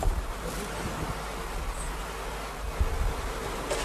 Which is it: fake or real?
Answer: real